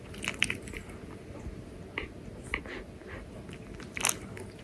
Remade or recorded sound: recorded